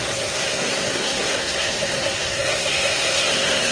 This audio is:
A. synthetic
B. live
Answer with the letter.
A